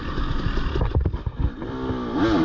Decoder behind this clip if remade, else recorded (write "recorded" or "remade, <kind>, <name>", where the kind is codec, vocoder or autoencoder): remade, vocoder, BigVGAN v2